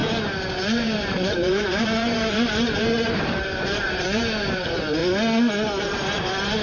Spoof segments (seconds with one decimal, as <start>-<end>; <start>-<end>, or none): 0.5-5.0; 5.8-6.6